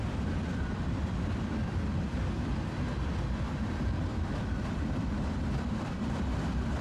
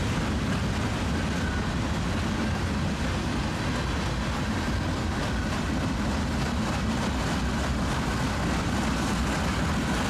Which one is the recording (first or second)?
second